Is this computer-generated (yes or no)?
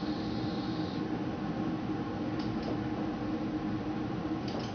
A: no